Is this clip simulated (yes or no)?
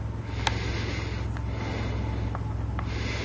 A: no